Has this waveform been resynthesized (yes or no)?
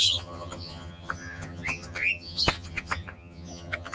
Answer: yes